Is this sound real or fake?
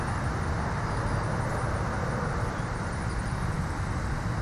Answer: real